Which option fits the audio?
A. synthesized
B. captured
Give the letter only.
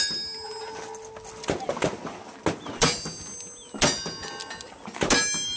B